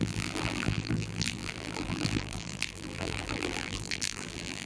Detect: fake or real fake